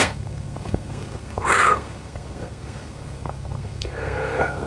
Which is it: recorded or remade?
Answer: remade